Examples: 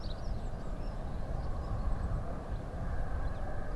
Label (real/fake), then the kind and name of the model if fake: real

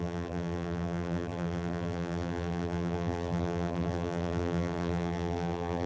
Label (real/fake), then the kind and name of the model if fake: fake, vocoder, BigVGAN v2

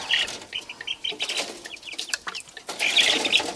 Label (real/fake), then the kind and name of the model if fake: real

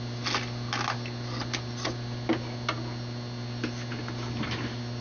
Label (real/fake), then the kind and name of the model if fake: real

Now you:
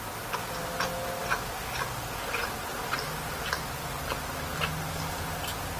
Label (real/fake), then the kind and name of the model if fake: real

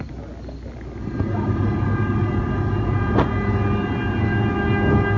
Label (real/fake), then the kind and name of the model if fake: real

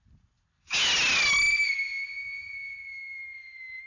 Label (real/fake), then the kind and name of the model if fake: real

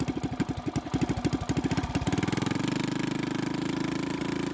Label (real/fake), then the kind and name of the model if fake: real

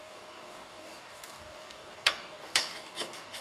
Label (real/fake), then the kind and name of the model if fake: fake, codec, DAC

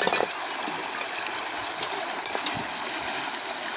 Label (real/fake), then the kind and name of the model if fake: real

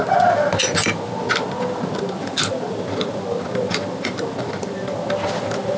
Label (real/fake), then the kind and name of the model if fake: real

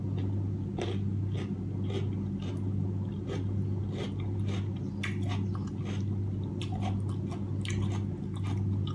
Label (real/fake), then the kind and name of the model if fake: real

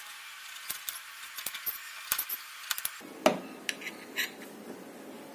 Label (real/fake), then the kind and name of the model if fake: real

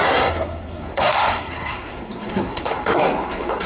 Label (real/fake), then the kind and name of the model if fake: fake, codec, SNAC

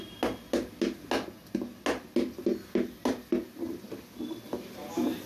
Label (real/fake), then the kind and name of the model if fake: real